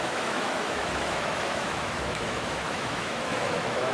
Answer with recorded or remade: remade